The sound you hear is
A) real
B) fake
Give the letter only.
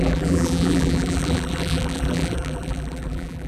B